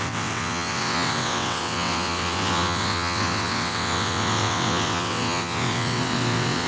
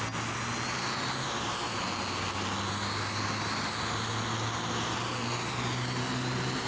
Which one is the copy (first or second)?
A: first